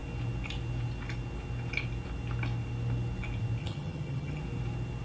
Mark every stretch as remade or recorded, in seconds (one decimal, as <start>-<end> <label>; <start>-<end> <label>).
0.0-3.6 recorded; 3.6-4.4 remade; 4.4-5.0 recorded